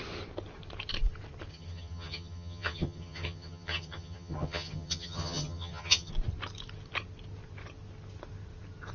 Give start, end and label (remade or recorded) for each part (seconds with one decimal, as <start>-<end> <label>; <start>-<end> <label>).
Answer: 0.0-1.5 recorded; 1.5-6.1 remade; 6.1-8.9 recorded